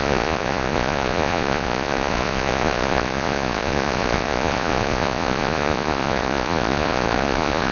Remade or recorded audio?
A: remade